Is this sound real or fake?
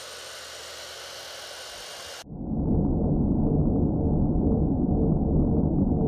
real